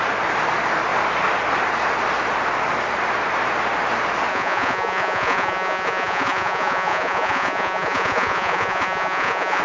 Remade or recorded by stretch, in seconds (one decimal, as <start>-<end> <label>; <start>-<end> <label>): 0.0-4.3 recorded; 4.3-9.6 remade